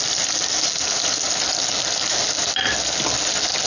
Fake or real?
real